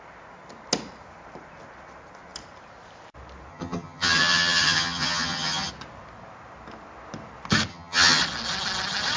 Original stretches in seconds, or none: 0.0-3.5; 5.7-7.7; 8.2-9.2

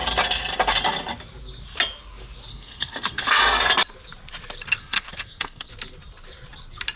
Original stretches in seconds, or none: 0.0-2.5; 3.4-4.8; 5.7-7.0

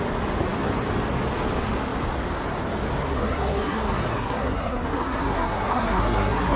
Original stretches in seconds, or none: 0.0-3.1

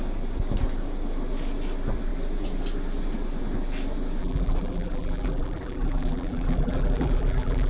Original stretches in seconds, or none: 0.0-4.2

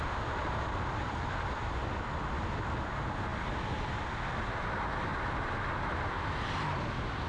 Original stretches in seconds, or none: 0.0-7.3

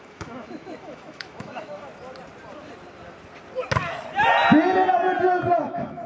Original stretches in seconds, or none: 1.9-5.6